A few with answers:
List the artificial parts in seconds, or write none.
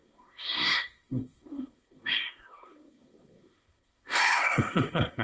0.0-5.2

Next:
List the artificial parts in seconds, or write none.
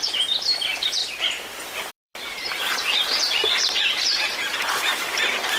0.0-1.0; 1.9-5.6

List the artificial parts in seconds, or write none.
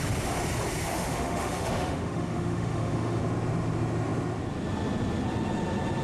0.9-3.2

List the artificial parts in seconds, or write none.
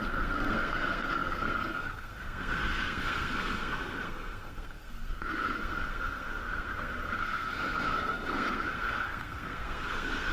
0.0-10.3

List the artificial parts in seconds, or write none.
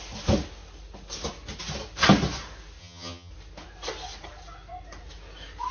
2.8-3.3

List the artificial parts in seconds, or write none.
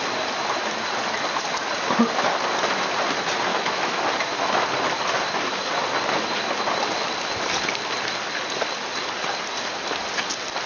3.5-4.0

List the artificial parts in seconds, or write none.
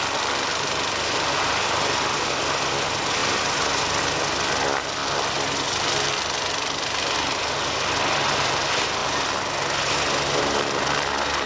none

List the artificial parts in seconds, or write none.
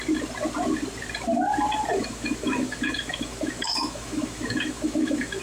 1.9-5.4